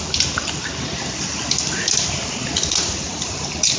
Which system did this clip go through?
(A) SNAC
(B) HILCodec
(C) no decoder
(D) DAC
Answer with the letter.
C